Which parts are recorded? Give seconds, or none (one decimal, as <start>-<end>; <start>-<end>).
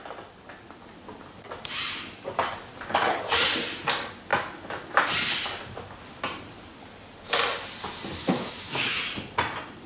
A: 0.0-8.2; 9.0-9.9